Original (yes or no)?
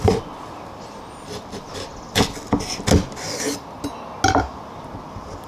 yes